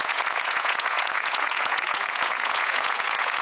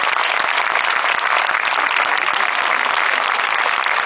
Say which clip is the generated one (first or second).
first